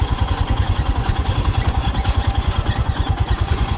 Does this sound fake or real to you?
fake